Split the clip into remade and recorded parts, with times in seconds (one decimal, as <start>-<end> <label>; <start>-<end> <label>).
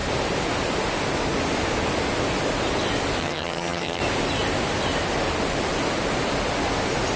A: 0.0-3.2 recorded; 3.2-4.0 remade; 4.0-7.2 recorded